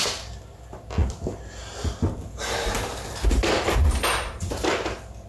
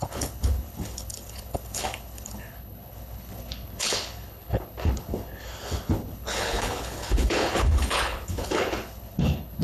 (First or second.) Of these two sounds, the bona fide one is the first